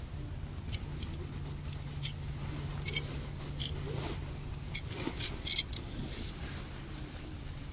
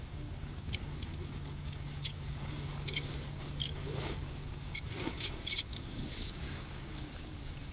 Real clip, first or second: first